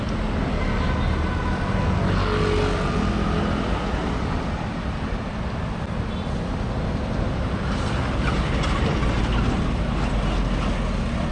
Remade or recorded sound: recorded